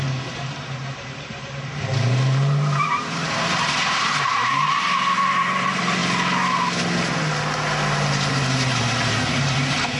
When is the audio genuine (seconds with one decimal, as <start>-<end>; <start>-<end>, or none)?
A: 6.0-8.3